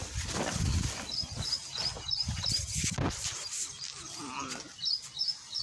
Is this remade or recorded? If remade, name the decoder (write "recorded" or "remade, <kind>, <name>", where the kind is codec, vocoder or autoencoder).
recorded